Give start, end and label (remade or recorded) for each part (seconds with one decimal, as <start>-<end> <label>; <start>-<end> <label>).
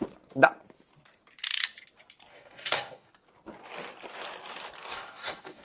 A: 0.0-2.3 recorded; 2.3-3.1 remade; 3.1-4.9 recorded; 4.9-5.6 remade